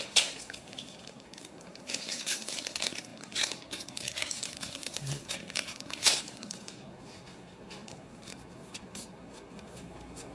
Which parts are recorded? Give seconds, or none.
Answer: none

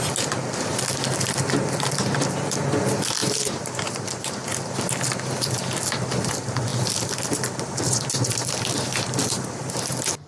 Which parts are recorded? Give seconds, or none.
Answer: 0.0-3.2; 4.7-10.3

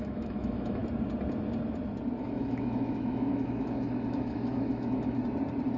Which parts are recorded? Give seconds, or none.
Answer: 0.8-2.2; 5.2-5.8

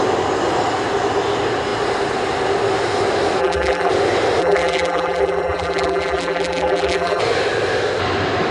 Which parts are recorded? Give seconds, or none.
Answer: 0.0-3.4; 3.9-4.4; 7.2-8.5

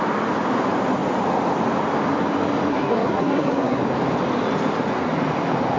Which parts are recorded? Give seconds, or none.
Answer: 0.0-2.7; 3.8-5.8

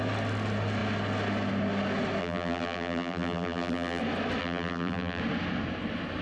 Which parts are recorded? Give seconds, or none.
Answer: 0.0-2.2; 4.0-4.4; 5.2-6.2

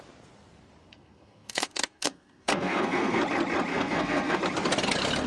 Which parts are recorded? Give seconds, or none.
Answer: 0.0-0.9; 3.2-3.7; 4.4-5.3

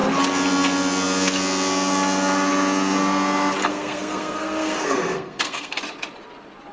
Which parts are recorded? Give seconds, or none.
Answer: 0.0-3.6; 5.8-6.7